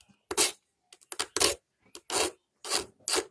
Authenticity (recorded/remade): recorded